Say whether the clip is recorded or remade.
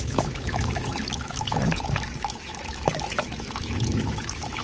remade